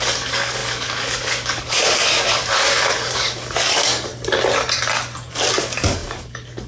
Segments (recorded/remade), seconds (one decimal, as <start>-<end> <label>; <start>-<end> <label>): 0.0-4.1 remade; 4.1-5.6 recorded; 5.6-6.7 remade